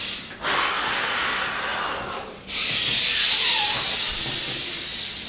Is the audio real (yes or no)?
yes